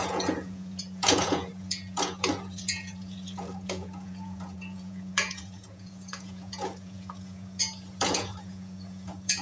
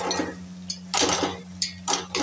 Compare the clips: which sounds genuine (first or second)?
second